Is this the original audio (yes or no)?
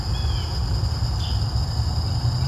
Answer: yes